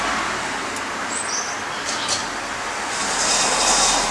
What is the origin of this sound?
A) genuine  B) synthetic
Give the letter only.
A